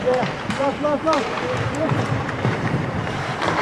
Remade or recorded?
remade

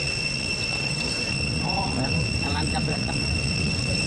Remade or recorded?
remade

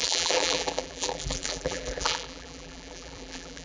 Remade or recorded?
remade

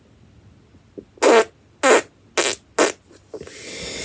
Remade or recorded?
recorded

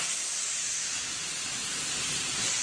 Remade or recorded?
remade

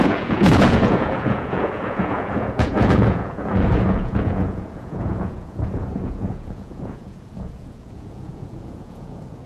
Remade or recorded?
remade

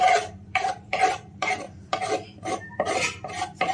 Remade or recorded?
remade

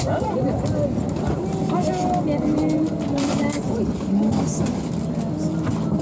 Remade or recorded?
recorded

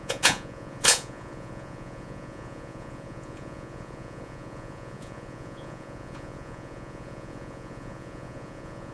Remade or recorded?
remade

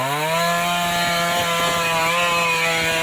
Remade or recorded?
recorded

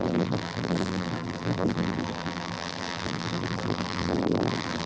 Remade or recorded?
remade